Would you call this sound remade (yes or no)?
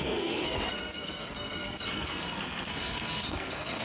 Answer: yes